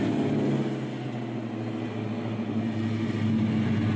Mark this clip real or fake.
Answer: real